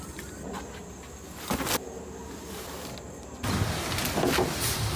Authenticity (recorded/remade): recorded